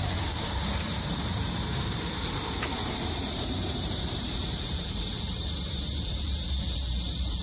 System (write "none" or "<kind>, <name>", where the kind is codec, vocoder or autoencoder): vocoder, BigVGAN v2